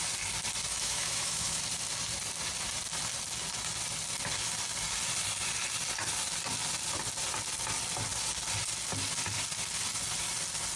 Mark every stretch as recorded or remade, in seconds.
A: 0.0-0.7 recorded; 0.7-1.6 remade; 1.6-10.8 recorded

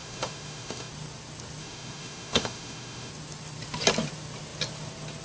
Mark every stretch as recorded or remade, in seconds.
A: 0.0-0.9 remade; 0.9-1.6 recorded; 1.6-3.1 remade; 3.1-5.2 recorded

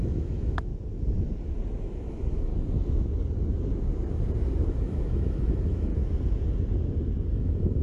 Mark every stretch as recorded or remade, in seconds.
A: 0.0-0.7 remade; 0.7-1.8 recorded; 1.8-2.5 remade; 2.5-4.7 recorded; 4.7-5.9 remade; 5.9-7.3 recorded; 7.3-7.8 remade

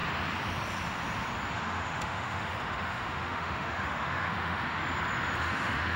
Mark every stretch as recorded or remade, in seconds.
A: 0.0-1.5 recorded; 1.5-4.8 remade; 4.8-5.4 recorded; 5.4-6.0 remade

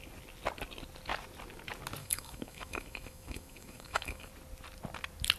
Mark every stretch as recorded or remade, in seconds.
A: 0.0-2.0 recorded; 2.0-4.3 remade; 4.3-5.4 recorded